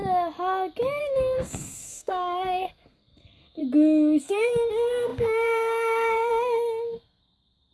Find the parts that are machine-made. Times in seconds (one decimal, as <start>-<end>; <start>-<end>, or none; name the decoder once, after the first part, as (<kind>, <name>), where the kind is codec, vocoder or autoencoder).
1.0-3.6 (codec, SNAC); 4.2-7.7